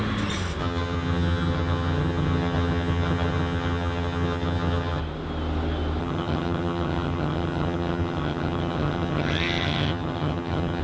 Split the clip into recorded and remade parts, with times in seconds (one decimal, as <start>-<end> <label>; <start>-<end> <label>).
0.0-0.6 recorded; 0.6-5.0 remade; 5.0-6.0 recorded; 6.0-10.8 remade